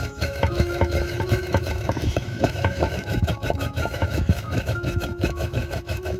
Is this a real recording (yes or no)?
no